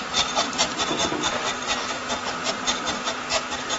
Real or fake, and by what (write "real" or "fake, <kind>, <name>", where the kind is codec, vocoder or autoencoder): real